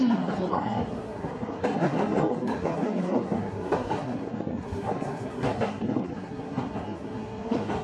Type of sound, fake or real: fake